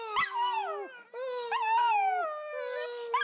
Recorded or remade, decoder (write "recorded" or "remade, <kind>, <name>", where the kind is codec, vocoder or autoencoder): recorded